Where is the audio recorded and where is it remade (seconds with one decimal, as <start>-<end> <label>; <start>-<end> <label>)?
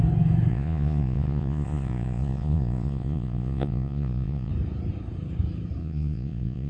0.0-0.5 recorded; 0.5-4.5 remade; 4.5-5.8 recorded; 5.8-6.7 remade